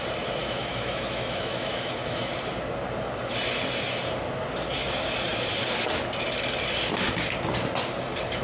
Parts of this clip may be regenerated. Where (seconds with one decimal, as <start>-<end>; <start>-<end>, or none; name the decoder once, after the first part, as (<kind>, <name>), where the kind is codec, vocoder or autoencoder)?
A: 0.4-2.3 (autoencoder, DAC-VAE)